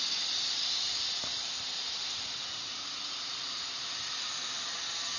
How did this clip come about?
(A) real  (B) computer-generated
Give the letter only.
A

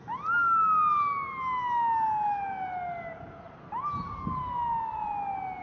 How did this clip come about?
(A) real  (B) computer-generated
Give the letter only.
A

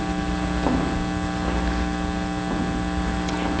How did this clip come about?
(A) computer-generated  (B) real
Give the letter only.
B